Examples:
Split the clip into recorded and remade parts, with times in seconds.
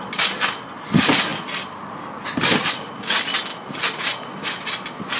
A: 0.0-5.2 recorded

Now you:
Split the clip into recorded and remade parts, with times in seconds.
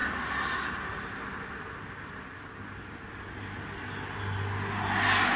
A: 0.0-5.4 recorded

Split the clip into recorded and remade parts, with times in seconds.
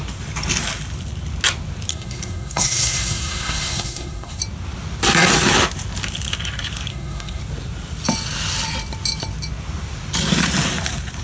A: 0.0-1.9 recorded; 1.9-4.4 remade; 4.4-6.9 recorded; 6.9-7.4 remade; 7.4-11.2 recorded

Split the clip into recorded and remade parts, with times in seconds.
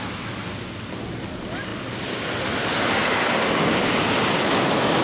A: 0.0-5.0 recorded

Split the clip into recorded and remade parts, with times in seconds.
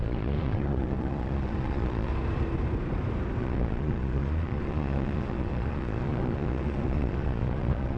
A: 0.0-2.1 remade; 2.1-3.4 recorded; 3.4-8.0 remade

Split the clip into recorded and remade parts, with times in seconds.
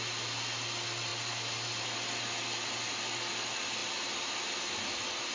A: 0.0-3.8 recorded; 3.8-5.3 remade